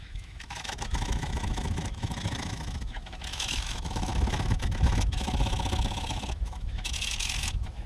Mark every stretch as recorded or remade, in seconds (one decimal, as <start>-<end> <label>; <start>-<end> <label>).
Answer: 0.0-7.9 remade